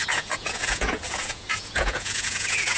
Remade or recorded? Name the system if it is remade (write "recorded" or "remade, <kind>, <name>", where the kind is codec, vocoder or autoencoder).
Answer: remade, vocoder, Vocos